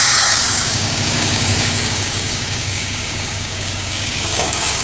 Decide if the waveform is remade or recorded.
remade